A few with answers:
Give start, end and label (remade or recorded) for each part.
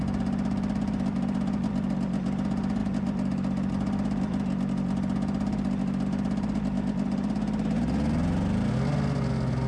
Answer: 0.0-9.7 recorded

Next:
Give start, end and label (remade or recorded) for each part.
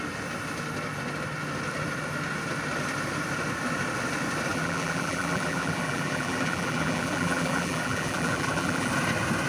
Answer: 0.0-4.5 recorded; 4.5-8.9 remade; 8.9-9.5 recorded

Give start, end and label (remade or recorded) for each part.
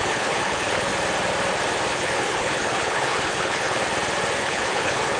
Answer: 0.0-0.9 remade; 0.9-1.9 recorded; 1.9-3.8 remade; 3.8-4.4 recorded; 4.4-5.2 remade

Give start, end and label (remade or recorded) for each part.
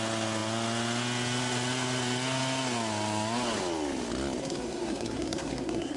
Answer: 0.0-4.4 recorded; 4.4-6.0 remade